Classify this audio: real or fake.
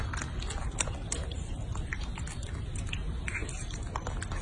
real